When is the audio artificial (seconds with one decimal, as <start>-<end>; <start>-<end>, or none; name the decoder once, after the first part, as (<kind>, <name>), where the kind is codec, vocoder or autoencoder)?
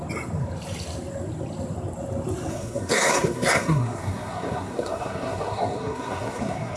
2.5-6.8 (codec, SNAC)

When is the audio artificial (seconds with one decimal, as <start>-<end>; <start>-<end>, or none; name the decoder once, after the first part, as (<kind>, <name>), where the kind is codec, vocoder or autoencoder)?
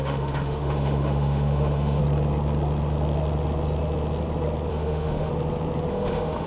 0.0-2.0 (autoencoder, DAC-VAE); 4.7-5.3; 5.9-6.5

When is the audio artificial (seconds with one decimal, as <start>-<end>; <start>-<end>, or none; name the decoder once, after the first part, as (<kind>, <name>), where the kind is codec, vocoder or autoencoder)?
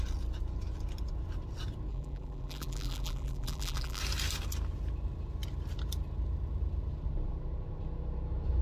1.9-4.0 (vocoder, BigVGAN v2)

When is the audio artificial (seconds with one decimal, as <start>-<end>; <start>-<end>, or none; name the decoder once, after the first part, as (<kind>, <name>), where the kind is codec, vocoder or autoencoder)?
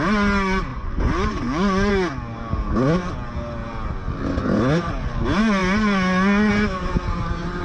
0.7-1.9 (vocoder, Vocos)